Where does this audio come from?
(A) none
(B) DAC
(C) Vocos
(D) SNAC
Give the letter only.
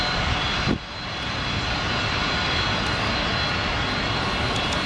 A